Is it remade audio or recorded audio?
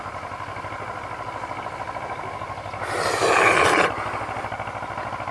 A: recorded